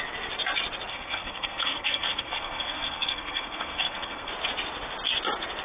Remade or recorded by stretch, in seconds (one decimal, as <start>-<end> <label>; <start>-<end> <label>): 0.0-0.9 recorded; 0.9-4.3 remade; 4.3-5.6 recorded